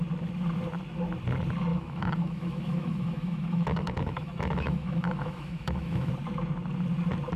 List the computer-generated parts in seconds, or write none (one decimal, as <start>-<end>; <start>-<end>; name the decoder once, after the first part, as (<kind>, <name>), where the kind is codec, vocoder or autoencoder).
1.7-6.1 (autoencoder, DAC-VAE)